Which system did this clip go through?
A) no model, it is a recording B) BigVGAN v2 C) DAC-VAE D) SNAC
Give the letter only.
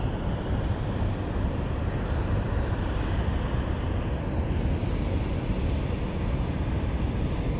A